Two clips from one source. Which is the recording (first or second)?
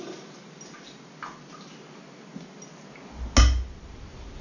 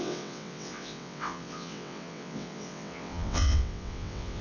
first